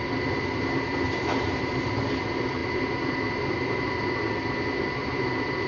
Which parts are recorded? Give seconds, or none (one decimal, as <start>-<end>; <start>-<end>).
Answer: 0.0-5.7